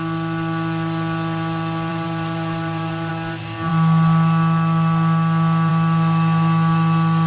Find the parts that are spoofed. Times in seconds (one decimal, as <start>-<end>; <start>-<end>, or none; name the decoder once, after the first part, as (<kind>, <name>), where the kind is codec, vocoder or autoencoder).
1.9-3.1 (vocoder, BigVGAN v2)